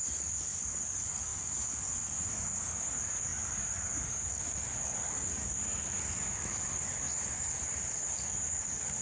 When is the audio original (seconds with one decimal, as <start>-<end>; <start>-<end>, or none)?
none